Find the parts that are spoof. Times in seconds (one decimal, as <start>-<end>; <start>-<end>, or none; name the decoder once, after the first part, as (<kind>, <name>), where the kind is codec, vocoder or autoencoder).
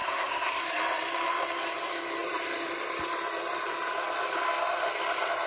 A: 0.0-0.6 (codec, SNAC)